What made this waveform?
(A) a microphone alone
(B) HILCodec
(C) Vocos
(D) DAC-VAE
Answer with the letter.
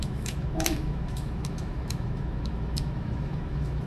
D